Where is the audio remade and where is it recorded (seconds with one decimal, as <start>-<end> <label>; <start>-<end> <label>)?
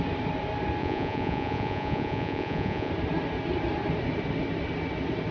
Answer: 0.0-0.8 recorded; 0.8-2.9 remade; 2.9-5.3 recorded